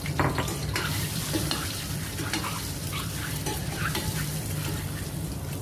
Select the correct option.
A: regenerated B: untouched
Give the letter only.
A